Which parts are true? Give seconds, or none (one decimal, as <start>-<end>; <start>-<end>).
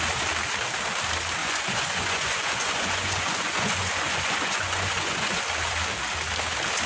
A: 0.0-1.4; 5.4-6.9